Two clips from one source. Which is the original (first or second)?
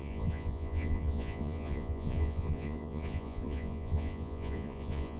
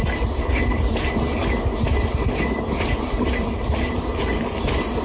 second